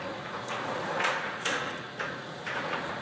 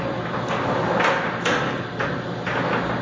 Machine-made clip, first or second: first